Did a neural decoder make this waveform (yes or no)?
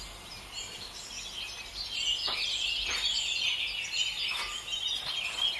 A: no